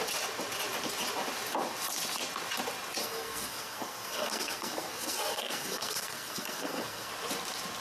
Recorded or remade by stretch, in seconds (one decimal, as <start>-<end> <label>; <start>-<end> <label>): 0.0-3.0 recorded; 3.0-7.1 remade; 7.1-7.8 recorded